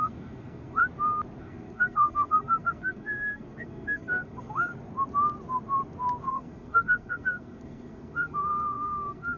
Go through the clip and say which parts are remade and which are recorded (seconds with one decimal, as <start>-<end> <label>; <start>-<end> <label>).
0.0-0.8 remade; 0.8-1.4 recorded; 1.4-4.7 remade; 4.7-6.3 recorded; 6.3-9.4 remade